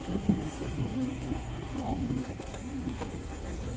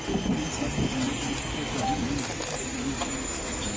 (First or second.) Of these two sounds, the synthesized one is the first